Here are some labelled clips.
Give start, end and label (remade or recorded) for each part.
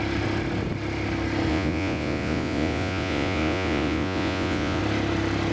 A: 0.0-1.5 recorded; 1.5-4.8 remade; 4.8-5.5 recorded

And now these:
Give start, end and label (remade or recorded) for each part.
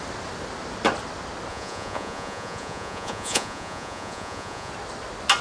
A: 0.0-1.5 recorded; 1.5-4.7 remade; 4.7-5.4 recorded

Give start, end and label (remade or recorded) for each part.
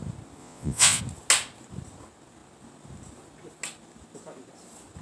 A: 0.0-0.4 recorded; 0.4-1.0 remade; 1.0-5.0 recorded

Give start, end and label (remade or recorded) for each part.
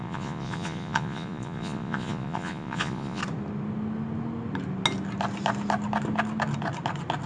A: 0.0-3.2 remade; 3.2-7.3 recorded